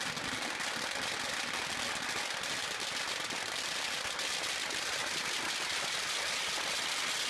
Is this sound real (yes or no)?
yes